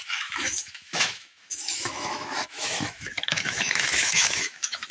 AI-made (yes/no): yes